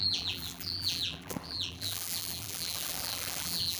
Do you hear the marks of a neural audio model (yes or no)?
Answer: yes